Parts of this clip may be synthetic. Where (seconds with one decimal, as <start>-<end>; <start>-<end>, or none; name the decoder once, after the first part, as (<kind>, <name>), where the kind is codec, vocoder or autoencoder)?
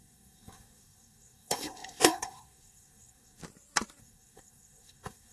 0.0-3.4 (codec, SNAC); 4.0-5.3